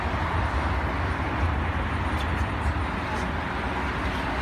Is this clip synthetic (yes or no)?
no